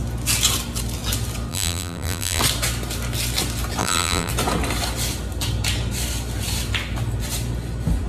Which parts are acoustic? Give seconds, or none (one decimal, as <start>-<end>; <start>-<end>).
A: 0.0-1.5; 2.4-3.8; 4.3-8.1